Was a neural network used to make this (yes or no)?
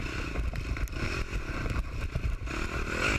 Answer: no